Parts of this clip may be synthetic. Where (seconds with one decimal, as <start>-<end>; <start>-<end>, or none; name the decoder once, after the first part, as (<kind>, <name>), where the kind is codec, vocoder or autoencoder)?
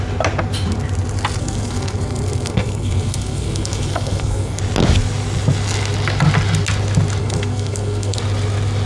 1.4-4.6 (codec, SNAC); 7.2-8.2